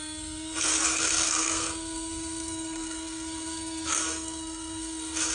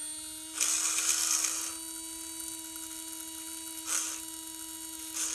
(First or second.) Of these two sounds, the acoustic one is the second